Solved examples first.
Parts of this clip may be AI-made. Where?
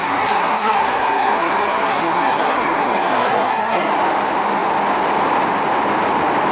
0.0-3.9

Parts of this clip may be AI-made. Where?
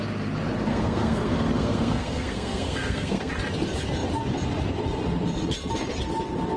0.7-3.3